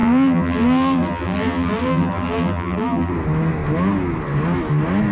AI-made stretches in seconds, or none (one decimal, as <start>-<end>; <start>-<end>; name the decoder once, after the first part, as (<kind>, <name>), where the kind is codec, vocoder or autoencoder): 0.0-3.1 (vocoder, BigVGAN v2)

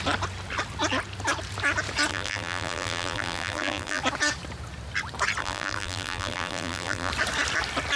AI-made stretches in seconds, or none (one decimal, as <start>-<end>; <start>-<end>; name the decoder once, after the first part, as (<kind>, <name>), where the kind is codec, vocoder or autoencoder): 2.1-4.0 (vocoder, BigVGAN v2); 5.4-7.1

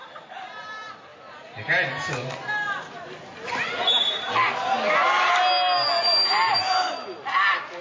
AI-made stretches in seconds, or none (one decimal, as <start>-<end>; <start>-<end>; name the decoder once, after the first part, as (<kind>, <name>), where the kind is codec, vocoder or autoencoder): none

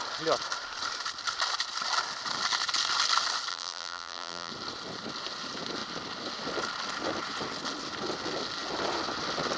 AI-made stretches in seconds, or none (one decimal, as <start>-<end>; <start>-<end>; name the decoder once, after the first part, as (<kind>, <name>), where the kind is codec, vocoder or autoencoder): 3.5-4.5 (vocoder, BigVGAN v2)

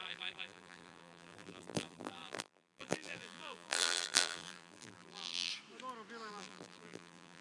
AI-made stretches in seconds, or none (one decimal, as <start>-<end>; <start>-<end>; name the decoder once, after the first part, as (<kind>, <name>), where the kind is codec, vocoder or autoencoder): 0.0-5.5 (vocoder, BigVGAN v2); 6.3-7.4

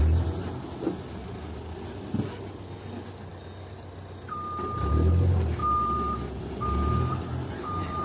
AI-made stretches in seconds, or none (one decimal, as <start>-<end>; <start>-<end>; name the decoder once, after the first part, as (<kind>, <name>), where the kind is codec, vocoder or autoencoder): 5.6-6.5 (vocoder, BigVGAN v2); 7.3-8.0